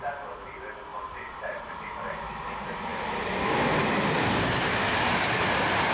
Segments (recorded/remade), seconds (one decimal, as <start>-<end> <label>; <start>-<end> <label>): 0.0-0.9 recorded; 0.9-1.6 remade; 1.6-5.9 recorded